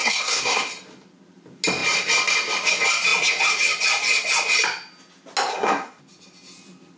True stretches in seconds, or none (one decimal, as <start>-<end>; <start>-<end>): 0.7-5.5; 6.0-7.0